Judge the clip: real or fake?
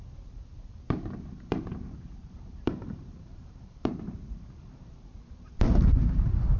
fake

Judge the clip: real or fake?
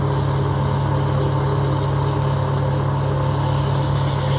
real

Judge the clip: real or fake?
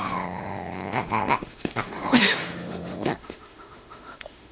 fake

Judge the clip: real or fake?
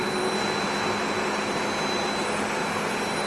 fake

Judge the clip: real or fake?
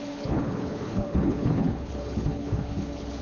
fake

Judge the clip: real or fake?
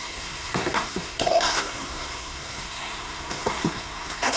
fake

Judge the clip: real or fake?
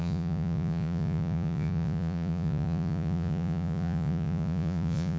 fake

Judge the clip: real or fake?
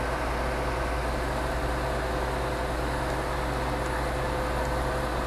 real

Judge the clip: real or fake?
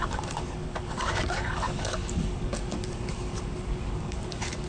fake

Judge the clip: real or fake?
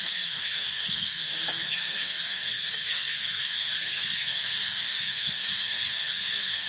fake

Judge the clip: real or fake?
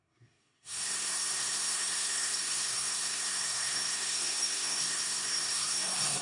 fake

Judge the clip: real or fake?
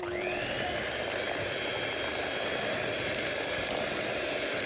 real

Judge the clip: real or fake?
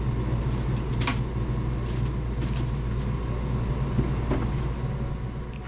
real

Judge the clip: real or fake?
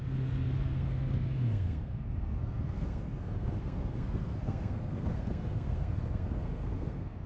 fake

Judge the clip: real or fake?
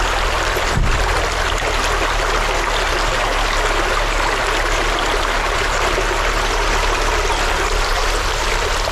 real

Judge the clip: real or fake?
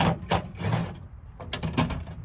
real